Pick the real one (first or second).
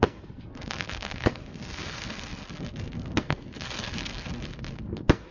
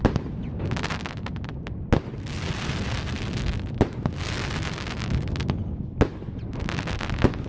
second